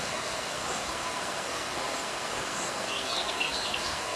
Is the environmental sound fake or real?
fake